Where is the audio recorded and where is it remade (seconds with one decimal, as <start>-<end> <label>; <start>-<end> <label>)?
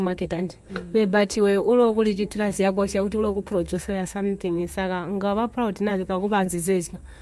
0.0-4.6 remade; 4.6-5.9 recorded; 5.9-7.2 remade